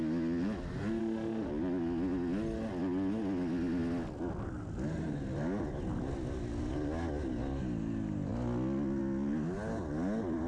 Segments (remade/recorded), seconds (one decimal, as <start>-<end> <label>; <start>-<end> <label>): 0.0-1.0 recorded; 1.0-1.5 remade; 1.5-10.5 recorded